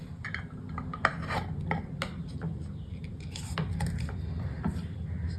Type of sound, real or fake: real